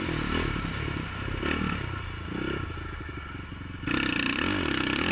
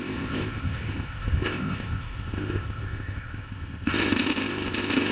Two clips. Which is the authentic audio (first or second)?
first